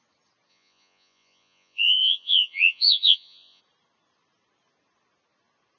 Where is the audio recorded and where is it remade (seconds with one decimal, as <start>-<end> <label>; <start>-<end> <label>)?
0.0-0.5 recorded; 0.5-3.6 remade; 3.6-5.8 recorded